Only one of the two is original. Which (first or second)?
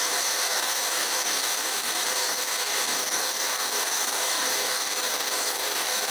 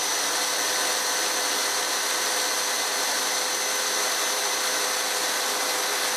second